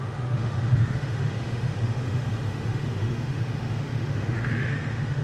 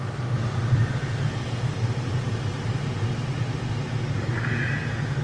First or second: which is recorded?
second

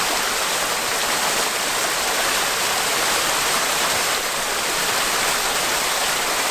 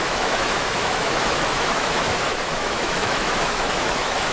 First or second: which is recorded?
first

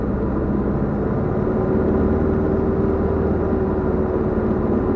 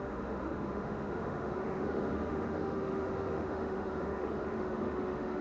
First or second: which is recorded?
first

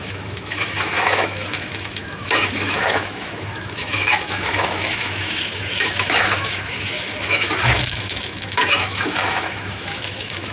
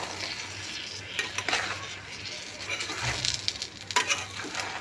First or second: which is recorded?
second